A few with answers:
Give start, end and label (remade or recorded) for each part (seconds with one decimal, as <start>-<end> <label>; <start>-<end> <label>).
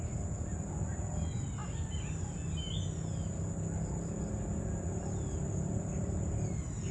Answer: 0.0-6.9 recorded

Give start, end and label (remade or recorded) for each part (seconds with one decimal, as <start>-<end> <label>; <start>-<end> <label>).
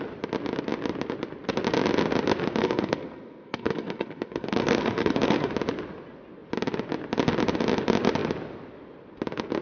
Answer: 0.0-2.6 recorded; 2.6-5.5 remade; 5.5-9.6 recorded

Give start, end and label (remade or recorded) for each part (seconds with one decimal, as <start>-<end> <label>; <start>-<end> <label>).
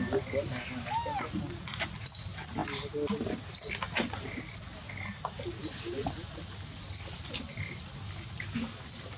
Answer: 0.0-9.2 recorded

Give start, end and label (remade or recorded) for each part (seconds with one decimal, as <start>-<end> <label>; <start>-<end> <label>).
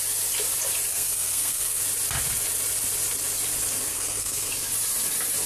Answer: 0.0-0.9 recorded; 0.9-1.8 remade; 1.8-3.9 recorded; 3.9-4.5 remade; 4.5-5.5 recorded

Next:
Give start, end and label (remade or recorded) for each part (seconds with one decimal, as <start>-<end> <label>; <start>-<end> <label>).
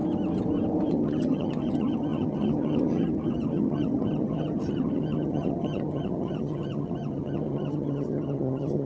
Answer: 0.0-0.9 recorded; 0.9-8.9 remade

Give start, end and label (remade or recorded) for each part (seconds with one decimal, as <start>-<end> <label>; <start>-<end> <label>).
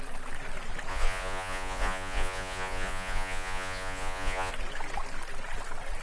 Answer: 0.0-0.9 recorded; 0.9-4.5 remade; 4.5-6.0 recorded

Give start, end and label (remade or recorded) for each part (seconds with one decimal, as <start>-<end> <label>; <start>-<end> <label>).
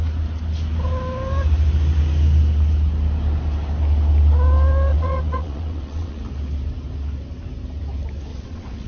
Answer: 0.0-4.9 recorded; 4.9-6.2 remade; 6.2-8.3 recorded; 8.3-8.9 remade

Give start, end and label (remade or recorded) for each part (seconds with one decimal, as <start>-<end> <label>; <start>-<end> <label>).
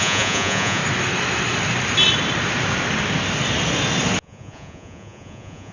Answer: 0.0-0.8 remade; 0.8-4.2 recorded; 4.2-5.7 remade